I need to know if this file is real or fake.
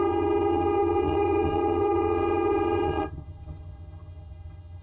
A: fake